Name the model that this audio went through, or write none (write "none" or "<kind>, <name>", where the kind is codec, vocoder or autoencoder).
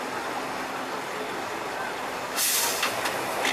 none